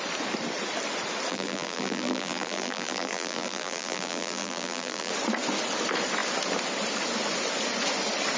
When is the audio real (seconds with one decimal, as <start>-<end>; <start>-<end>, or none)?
0.0-1.3; 5.1-8.4